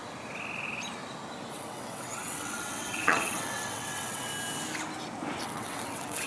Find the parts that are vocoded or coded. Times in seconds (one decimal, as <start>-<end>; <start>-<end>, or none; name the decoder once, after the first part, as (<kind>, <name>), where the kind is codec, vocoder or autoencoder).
1.5-4.3 (vocoder, WaveNeXt); 5.4-6.3